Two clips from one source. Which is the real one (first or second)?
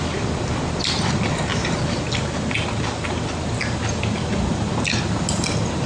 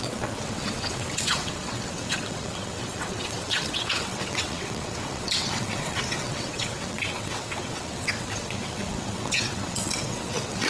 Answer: first